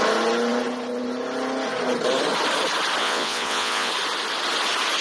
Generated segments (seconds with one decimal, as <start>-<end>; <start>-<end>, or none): 3.0-3.9